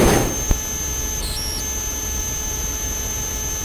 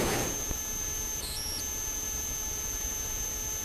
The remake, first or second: second